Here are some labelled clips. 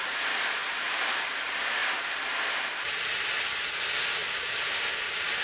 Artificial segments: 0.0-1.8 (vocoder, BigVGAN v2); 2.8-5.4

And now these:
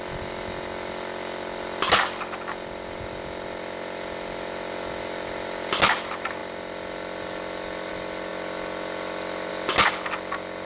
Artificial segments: none

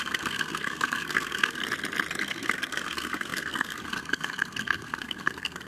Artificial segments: 0.0-1.6 (codec, SNAC); 2.2-5.7

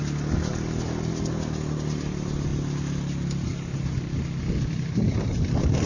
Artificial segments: none

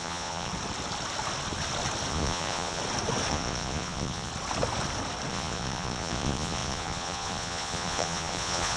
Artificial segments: 0.0-0.5 (vocoder, Vocos); 2.1-2.8; 3.3-4.3; 5.3-8.8

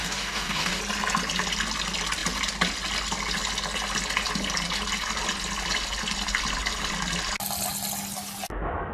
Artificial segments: 0.0-0.8 (codec, DAC)